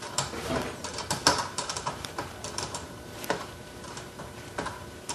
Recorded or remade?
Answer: remade